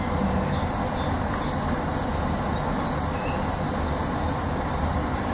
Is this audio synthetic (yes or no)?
no